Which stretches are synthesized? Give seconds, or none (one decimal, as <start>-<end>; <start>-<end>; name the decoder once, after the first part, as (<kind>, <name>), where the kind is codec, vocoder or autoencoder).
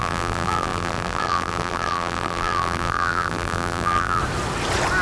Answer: 0.0-4.2 (vocoder, BigVGAN v2)